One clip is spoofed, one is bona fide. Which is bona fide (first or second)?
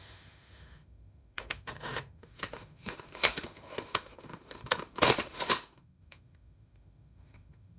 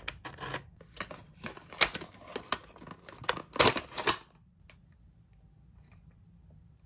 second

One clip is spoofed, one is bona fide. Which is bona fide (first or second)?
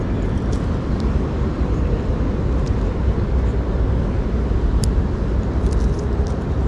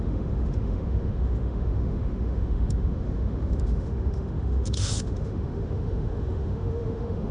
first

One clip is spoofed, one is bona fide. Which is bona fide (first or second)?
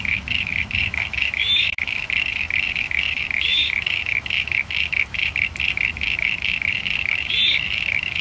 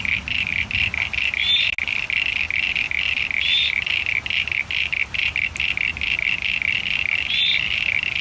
second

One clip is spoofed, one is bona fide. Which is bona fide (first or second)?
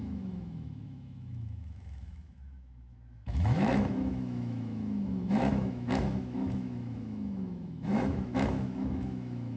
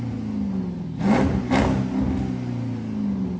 second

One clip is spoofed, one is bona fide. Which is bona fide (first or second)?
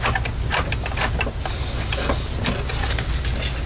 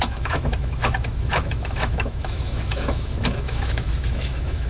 first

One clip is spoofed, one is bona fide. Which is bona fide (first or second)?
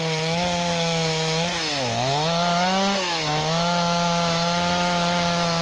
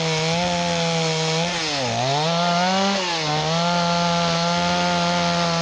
second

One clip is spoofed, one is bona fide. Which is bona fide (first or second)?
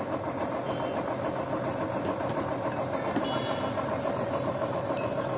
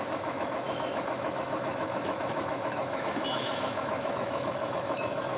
first